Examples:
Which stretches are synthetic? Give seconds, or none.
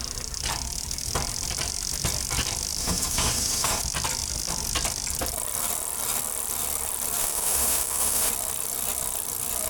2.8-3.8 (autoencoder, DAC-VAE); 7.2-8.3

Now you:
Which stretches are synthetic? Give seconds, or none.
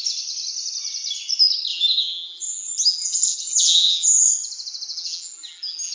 1.7-4.2 (vocoder, BigVGAN v2); 4.9-5.9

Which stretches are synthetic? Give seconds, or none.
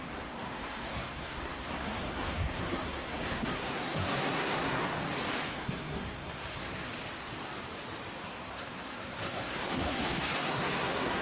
0.0-4.9 (codec, SNAC); 5.5-6.9; 8.2-11.2